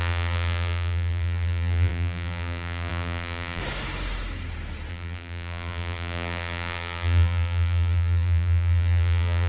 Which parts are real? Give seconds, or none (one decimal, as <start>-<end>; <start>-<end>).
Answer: 3.6-4.9